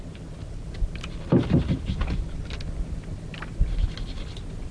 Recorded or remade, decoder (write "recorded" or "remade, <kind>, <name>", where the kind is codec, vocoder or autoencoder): recorded